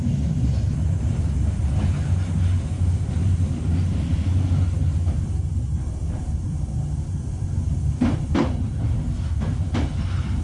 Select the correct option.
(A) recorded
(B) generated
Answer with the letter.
A